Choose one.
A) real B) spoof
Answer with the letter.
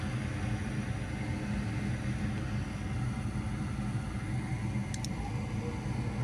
A